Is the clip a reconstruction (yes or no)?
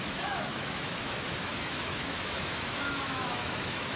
yes